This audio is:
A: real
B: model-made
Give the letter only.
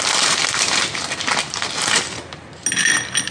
A